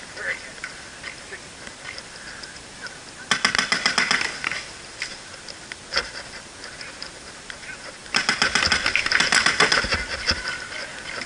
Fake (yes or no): no